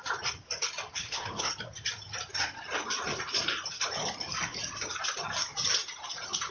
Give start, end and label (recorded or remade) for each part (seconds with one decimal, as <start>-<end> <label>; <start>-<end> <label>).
0.0-0.9 recorded; 0.9-1.5 remade; 1.5-6.5 recorded